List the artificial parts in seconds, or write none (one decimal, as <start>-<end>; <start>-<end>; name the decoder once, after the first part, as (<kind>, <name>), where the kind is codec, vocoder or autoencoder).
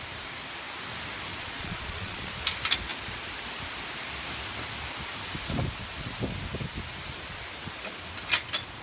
1.3-2.3 (vocoder, Vocos)